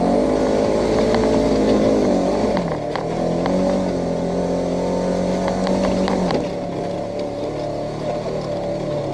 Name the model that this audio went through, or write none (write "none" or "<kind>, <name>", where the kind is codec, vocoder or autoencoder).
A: none